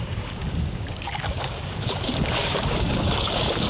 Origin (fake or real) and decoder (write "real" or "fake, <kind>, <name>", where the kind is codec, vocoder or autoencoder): fake, codec, DAC